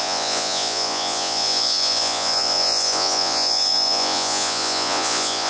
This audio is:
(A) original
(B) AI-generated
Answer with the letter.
B